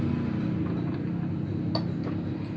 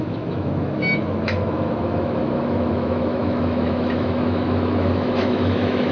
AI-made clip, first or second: second